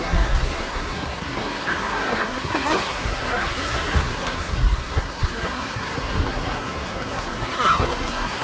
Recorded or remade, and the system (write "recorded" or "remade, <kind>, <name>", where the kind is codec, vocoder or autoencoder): remade, codec, SNAC